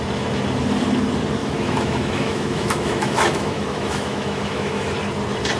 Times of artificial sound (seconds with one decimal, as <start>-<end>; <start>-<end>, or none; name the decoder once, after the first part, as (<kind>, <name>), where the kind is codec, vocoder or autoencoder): 1.4-4.8 (autoencoder, DAC-VAE)